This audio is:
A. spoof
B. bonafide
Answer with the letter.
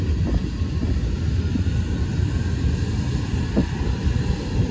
B